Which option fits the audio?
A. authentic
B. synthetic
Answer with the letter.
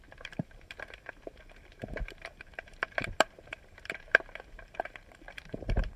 B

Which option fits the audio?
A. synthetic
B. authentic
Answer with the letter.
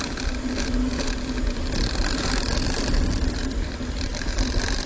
B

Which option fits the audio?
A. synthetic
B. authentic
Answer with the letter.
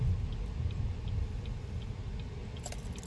B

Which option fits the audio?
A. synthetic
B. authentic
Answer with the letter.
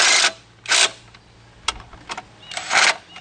B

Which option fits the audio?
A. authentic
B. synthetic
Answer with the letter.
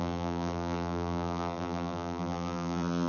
B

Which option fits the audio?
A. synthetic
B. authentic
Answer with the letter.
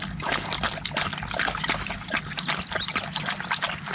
B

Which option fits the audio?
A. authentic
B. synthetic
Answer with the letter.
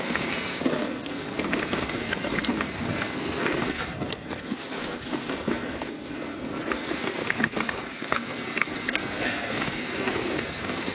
B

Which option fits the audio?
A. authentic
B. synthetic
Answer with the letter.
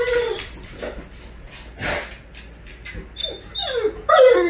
A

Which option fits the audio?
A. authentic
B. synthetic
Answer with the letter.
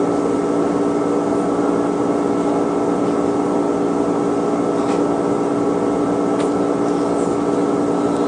A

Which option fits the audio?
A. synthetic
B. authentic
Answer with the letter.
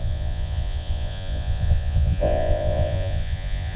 A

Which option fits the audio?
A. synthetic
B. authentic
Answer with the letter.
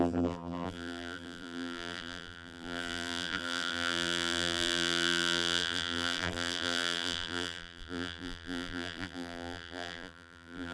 A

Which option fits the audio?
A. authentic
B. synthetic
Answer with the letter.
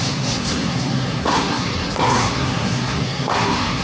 B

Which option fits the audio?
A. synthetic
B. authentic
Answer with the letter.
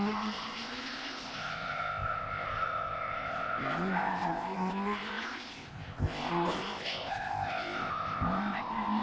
A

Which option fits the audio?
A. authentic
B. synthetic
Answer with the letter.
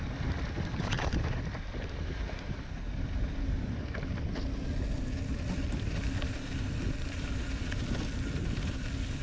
A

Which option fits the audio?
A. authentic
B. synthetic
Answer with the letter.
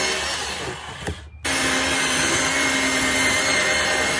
A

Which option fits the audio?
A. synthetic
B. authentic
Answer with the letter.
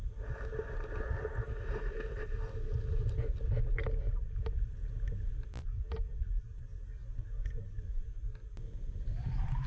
B